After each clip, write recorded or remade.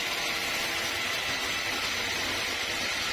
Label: recorded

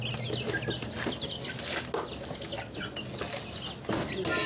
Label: recorded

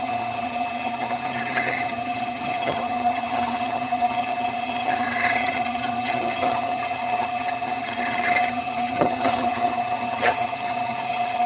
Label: remade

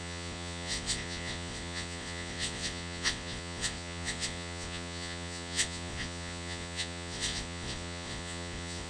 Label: remade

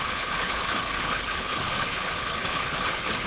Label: remade